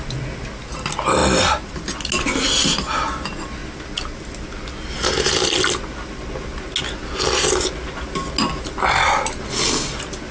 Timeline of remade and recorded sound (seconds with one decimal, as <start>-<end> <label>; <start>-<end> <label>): 0.0-10.3 recorded